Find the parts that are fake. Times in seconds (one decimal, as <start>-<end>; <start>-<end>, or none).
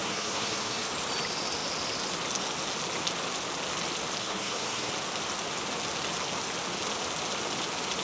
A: 0.0-0.9; 4.2-4.9